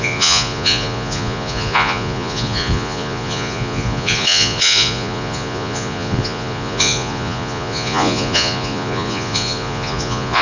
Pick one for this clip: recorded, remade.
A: remade